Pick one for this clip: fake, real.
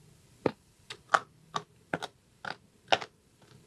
real